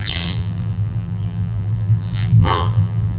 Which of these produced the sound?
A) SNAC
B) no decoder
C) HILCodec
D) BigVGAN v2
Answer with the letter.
D